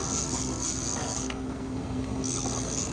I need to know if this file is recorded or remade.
remade